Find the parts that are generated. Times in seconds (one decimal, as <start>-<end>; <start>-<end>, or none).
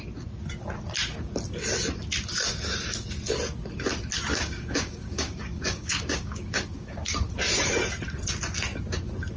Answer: 4.3-7.1